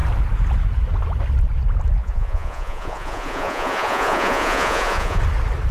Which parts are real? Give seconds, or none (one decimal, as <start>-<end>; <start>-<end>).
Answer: 0.0-2.0; 5.2-5.7

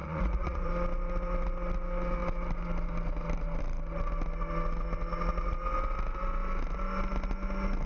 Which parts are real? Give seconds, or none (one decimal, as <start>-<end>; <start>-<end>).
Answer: 0.7-7.9

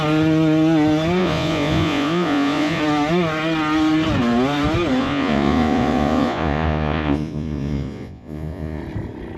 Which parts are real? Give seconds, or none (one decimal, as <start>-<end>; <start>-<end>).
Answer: 0.0-1.2; 2.8-5.0; 8.8-9.4